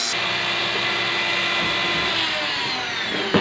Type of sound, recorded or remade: recorded